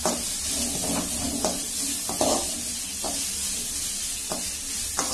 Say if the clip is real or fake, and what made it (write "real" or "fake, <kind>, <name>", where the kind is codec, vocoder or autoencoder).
real